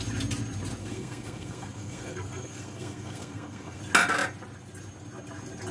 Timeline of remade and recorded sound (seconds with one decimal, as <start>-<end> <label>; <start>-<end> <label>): 0.0-0.8 recorded; 0.8-3.8 remade; 3.8-5.7 recorded